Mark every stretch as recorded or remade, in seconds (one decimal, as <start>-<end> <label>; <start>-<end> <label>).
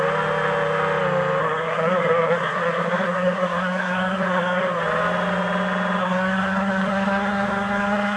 0.0-1.4 recorded; 1.4-4.8 remade; 4.8-6.0 recorded; 6.0-8.2 remade